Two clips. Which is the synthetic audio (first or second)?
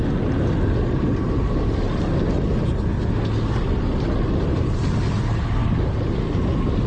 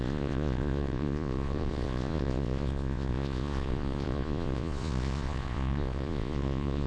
second